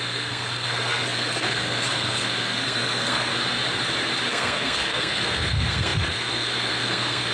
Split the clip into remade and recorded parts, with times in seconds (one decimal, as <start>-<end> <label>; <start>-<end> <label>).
0.0-3.3 remade; 3.3-4.3 recorded; 4.3-7.3 remade